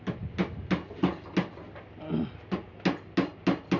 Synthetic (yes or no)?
no